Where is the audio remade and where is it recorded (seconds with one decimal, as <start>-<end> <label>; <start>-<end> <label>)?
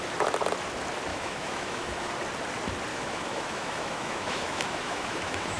0.0-1.1 recorded; 1.1-2.1 remade; 2.1-2.9 recorded; 2.9-5.6 remade